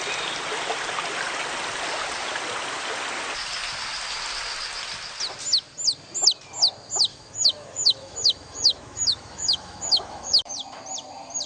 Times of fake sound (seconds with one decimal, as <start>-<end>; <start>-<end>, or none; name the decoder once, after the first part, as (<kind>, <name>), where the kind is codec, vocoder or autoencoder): 7.1-10.5 (autoencoder, DAC-VAE)